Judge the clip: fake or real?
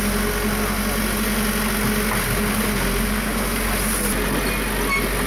real